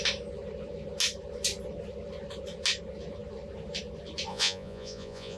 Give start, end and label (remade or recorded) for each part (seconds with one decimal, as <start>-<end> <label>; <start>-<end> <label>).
0.0-4.3 recorded; 4.3-5.4 remade